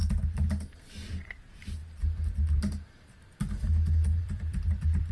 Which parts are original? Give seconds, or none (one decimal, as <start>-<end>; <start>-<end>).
0.0-0.9; 1.8-4.2

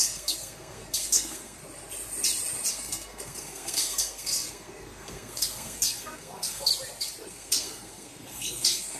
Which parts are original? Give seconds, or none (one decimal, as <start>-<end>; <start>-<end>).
1.6-2.7; 6.7-7.3

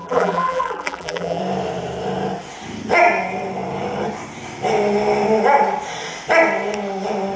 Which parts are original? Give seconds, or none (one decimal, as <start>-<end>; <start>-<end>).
1.4-7.4